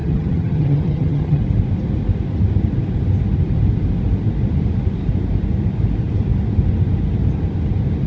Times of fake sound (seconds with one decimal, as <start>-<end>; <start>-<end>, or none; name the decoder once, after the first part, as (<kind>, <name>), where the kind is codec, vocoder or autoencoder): 0.0-1.4 (vocoder, HiFi-GAN)